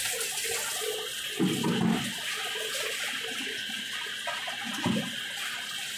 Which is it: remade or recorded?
recorded